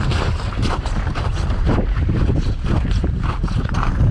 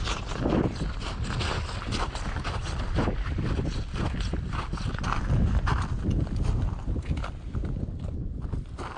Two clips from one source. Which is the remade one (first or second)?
first